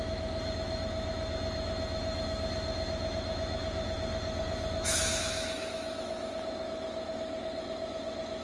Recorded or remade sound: remade